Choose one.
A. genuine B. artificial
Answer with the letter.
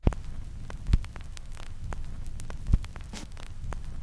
A